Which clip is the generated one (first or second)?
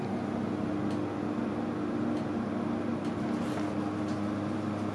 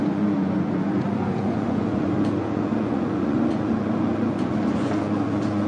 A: second